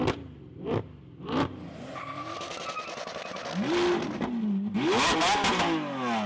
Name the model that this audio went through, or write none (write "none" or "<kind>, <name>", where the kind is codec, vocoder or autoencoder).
none